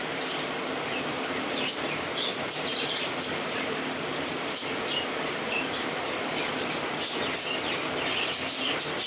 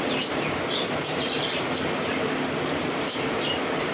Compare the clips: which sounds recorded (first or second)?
second